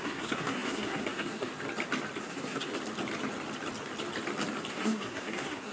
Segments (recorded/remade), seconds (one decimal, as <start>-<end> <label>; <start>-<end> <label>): 0.0-1.5 remade; 1.5-2.2 recorded; 2.2-2.7 remade; 2.7-4.7 recorded; 4.7-5.7 remade